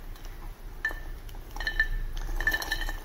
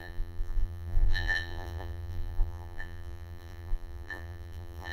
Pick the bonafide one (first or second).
first